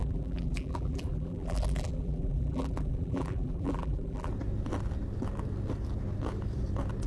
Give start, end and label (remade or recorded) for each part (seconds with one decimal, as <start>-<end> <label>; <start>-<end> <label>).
0.0-4.3 remade; 4.3-7.1 recorded